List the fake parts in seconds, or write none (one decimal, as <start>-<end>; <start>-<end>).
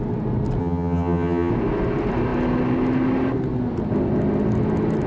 0.6-1.5